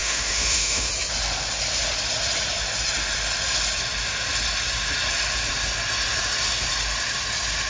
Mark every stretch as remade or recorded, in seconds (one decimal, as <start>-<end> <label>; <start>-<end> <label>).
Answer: 0.0-0.9 remade; 0.9-7.7 recorded